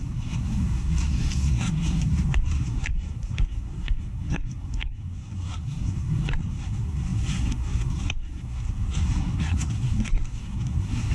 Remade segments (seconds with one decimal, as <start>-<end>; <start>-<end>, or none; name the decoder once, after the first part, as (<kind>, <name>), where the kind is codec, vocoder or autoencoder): 0.0-11.1 (codec, SNAC)